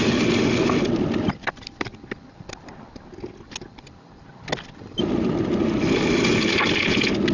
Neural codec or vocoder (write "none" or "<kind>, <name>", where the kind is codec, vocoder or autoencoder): none